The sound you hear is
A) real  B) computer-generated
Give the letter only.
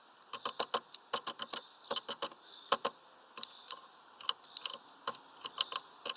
A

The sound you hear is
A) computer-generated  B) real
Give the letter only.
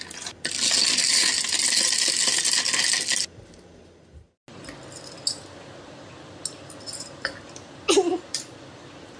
B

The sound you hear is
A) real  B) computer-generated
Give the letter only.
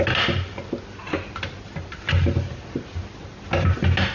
A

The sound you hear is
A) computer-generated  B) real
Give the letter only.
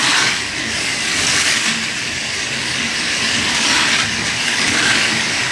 A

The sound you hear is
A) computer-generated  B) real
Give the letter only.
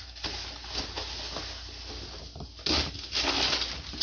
B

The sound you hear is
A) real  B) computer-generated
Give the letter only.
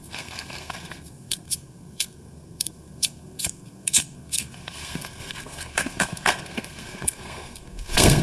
B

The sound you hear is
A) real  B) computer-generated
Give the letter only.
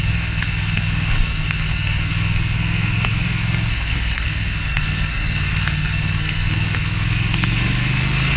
B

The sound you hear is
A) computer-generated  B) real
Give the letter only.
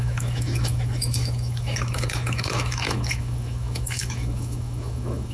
A